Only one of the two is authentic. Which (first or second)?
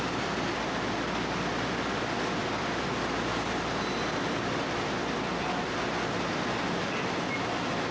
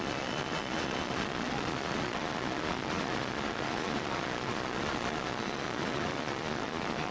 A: first